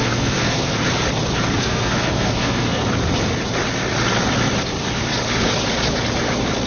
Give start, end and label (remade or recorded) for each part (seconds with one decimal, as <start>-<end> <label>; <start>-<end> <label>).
0.0-0.8 remade; 0.8-1.6 recorded; 1.6-2.8 remade; 2.8-6.7 recorded

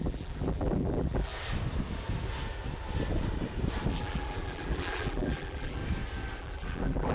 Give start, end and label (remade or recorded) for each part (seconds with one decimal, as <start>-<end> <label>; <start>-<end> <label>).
0.0-1.3 remade; 1.3-3.9 recorded; 3.9-5.8 remade; 5.8-6.4 recorded; 6.4-7.1 remade

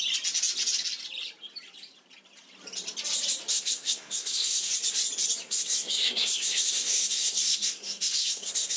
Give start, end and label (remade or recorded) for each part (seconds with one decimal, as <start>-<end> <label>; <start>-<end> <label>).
0.0-3.5 recorded; 3.5-4.7 remade; 4.7-5.4 recorded; 5.4-8.8 remade

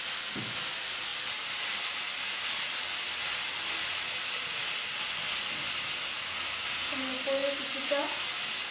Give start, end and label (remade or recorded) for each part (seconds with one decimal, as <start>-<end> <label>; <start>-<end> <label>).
0.0-8.7 recorded

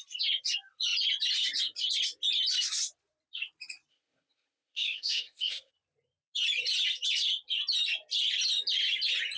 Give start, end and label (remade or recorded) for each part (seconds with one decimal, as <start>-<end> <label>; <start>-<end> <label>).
0.0-3.9 recorded; 3.9-5.7 remade; 5.7-9.4 recorded

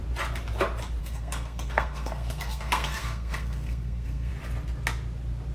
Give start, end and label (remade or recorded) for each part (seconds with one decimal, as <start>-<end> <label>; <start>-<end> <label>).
0.0-1.0 recorded; 1.0-4.3 remade; 4.3-5.5 recorded

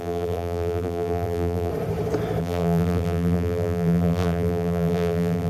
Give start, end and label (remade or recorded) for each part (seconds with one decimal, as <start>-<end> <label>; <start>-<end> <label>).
0.0-1.7 remade; 1.7-2.4 recorded; 2.4-5.5 remade

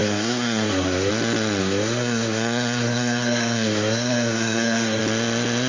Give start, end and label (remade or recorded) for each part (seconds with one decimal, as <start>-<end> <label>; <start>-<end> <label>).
0.0-1.1 remade; 1.1-1.6 recorded; 1.6-5.0 remade; 5.0-5.7 recorded